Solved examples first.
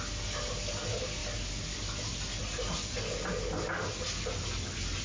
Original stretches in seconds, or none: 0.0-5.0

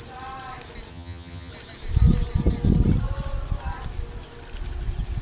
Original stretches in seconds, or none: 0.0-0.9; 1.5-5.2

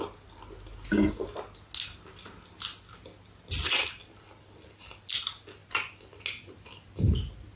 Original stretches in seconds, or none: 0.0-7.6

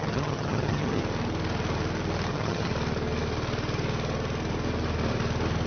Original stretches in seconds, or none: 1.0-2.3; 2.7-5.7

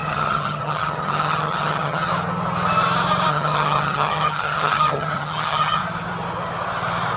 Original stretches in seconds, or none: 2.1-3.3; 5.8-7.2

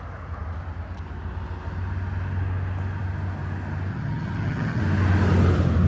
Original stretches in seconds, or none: 0.0-3.9; 4.8-5.9

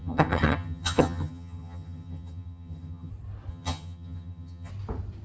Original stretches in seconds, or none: 3.1-3.5; 4.7-5.2

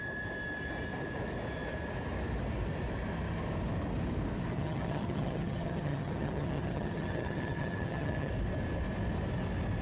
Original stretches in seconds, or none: 0.0-4.5; 8.3-9.8